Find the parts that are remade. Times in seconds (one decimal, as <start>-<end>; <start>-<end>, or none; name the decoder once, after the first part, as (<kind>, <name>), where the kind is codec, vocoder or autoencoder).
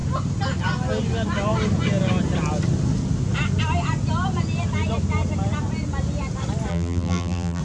6.7-7.6 (vocoder, BigVGAN v2)